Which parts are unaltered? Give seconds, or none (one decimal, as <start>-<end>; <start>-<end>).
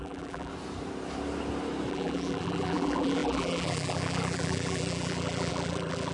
0.5-1.9